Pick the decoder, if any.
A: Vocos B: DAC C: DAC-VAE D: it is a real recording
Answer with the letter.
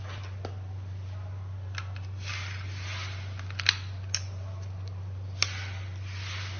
D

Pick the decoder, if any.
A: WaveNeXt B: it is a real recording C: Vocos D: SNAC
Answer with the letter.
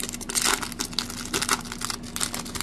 B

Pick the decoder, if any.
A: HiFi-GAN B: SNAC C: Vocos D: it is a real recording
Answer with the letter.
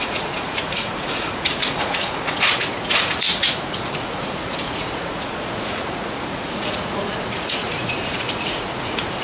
C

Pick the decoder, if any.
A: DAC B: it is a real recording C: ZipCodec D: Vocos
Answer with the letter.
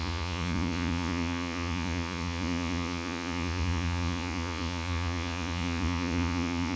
D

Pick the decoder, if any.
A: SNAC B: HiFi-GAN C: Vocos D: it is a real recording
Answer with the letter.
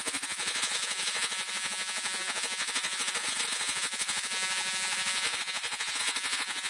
C